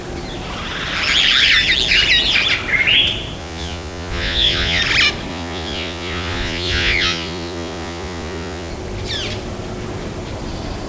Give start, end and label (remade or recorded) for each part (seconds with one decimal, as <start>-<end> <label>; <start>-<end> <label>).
0.0-3.4 recorded; 3.4-4.8 remade; 4.8-5.3 recorded; 5.3-8.7 remade; 8.7-10.9 recorded